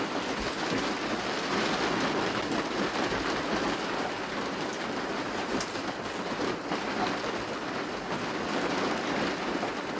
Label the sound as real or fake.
real